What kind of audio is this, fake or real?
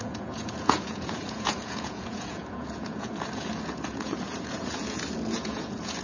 fake